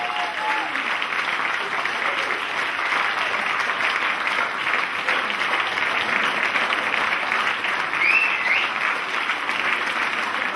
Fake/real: real